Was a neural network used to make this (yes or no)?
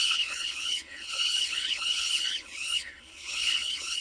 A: yes